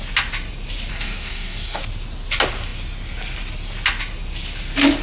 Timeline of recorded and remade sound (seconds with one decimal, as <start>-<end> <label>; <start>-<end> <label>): 0.0-0.9 recorded; 0.9-1.8 remade; 1.8-5.0 recorded